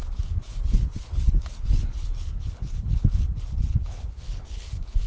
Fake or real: fake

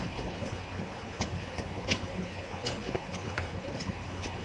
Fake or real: fake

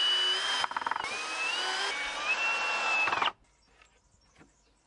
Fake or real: real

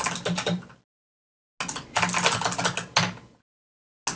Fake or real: real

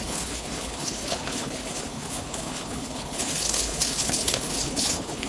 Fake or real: fake